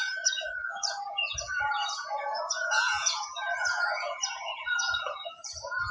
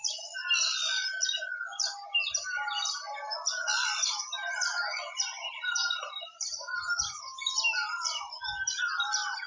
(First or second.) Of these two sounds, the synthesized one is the first